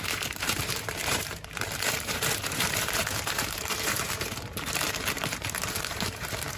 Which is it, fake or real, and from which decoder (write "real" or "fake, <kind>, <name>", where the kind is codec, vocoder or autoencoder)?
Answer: fake, vocoder, BigVGAN v2